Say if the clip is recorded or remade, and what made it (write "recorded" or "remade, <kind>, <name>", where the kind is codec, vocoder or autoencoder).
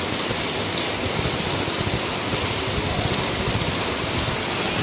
recorded